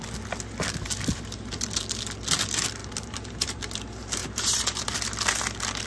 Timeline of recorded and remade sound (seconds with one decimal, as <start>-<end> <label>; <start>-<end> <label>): 0.0-2.8 recorded; 2.8-3.6 remade; 3.6-4.2 recorded; 4.2-5.0 remade; 5.0-5.9 recorded